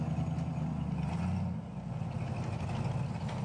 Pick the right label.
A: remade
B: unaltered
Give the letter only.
B